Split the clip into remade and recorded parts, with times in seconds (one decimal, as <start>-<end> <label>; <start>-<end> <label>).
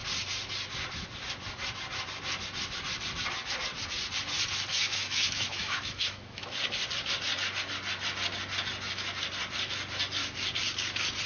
0.0-4.7 recorded; 4.7-6.6 remade; 6.6-11.3 recorded